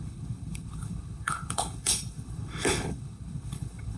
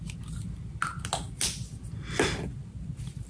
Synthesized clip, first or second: first